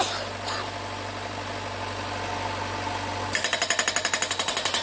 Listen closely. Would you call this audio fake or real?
real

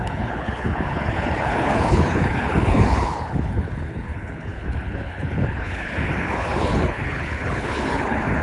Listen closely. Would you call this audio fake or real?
fake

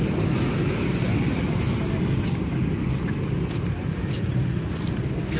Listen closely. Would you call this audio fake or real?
real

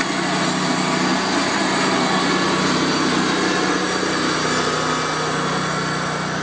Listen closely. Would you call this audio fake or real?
real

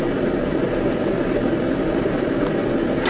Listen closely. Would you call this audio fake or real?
real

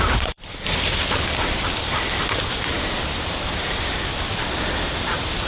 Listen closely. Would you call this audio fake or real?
fake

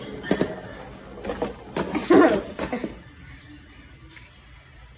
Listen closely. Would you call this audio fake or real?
real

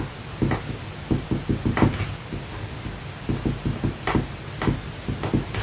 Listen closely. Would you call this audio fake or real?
real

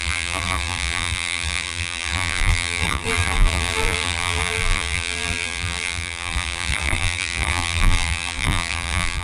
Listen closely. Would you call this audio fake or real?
fake